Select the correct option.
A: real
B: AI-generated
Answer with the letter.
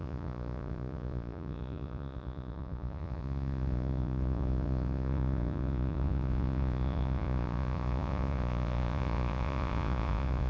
B